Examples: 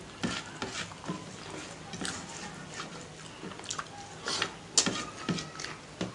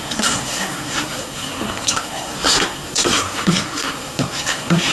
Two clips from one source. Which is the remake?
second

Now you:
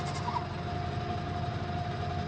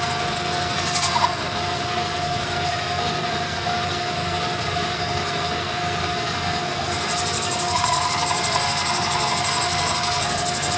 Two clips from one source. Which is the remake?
second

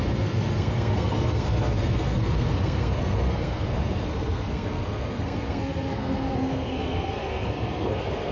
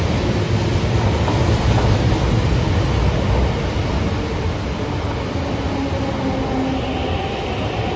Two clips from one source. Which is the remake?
first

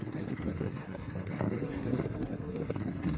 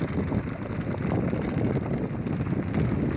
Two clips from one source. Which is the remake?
first